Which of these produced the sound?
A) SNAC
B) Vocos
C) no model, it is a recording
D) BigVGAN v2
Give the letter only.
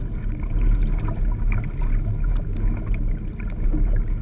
C